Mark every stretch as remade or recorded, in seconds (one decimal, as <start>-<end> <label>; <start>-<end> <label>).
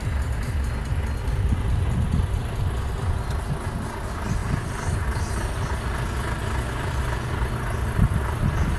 0.0-8.8 recorded